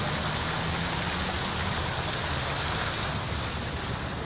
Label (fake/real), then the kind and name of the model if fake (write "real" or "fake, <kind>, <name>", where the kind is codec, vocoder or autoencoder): real